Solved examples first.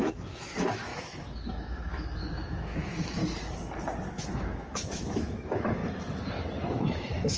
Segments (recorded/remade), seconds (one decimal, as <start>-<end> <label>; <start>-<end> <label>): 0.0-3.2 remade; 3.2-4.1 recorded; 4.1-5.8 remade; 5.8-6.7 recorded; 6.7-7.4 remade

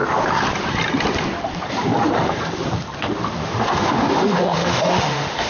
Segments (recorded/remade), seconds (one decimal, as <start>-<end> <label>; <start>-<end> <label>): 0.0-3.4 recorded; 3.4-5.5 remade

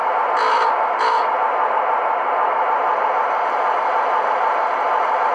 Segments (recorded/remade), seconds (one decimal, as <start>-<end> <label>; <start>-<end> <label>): 0.0-5.3 recorded